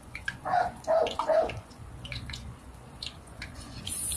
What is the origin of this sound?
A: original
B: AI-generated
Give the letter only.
B